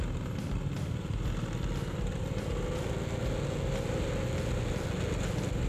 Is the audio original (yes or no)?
yes